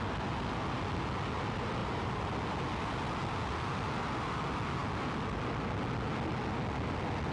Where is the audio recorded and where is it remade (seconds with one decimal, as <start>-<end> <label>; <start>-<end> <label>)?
0.0-1.8 recorded; 1.8-2.3 remade; 2.3-7.3 recorded